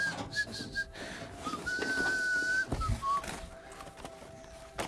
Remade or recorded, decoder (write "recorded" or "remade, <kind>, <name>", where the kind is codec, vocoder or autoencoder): recorded